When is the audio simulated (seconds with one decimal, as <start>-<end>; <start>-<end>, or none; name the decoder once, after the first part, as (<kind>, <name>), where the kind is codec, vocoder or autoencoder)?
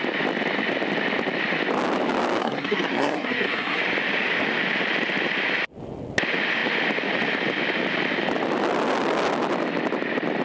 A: 2.4-3.8 (codec, SNAC)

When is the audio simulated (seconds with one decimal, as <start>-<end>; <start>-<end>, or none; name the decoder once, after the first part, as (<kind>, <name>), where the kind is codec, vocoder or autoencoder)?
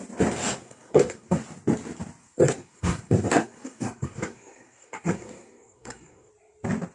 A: 0.6-1.4 (codec, SNAC); 2.2-6.3